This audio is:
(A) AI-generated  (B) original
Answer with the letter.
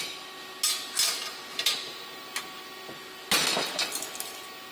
B